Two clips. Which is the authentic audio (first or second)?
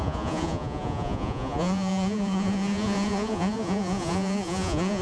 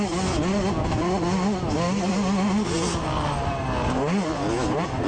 second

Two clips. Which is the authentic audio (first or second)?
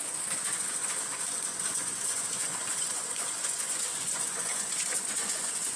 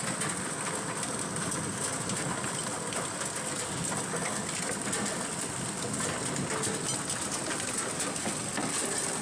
second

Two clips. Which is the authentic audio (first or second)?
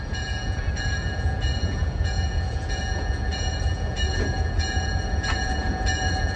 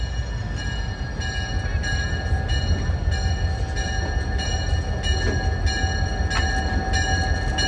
second